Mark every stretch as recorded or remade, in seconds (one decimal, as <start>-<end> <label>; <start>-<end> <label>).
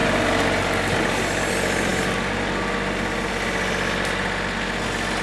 0.0-5.2 recorded